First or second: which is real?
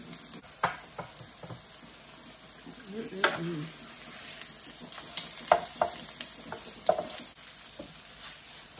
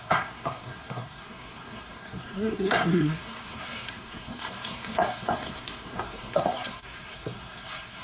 first